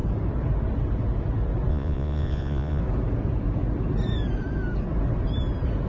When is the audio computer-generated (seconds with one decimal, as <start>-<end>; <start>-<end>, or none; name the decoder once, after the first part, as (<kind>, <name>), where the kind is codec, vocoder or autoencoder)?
1.7-2.8 (vocoder, Vocos)